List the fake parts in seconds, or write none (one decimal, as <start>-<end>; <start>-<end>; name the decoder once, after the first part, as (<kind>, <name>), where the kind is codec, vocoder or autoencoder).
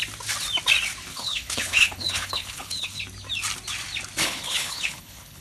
1.1-3.0 (codec, HILCodec); 4.2-5.4